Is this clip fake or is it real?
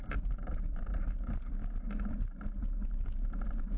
real